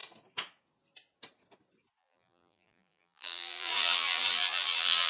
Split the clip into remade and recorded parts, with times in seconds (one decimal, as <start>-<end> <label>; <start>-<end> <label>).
0.0-2.0 recorded; 2.0-5.1 remade